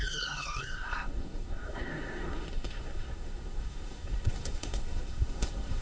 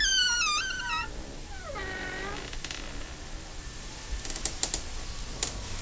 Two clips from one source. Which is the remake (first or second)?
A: first